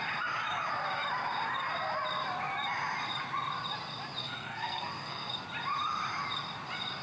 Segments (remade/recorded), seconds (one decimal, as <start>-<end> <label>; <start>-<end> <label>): 0.0-4.2 recorded; 4.2-5.3 remade; 5.3-7.0 recorded